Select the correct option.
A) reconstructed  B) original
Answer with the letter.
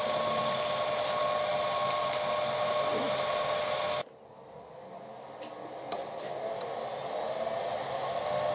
B